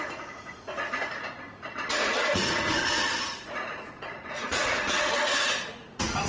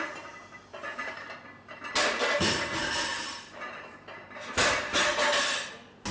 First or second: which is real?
second